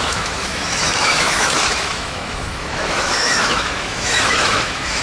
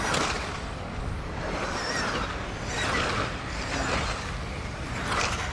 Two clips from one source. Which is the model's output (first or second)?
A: first